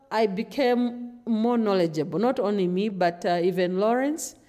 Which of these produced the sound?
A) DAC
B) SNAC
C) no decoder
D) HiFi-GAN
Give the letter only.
C